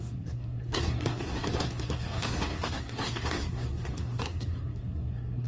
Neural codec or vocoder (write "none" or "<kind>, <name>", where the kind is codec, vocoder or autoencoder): codec, SNAC